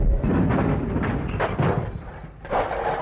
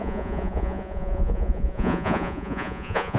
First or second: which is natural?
first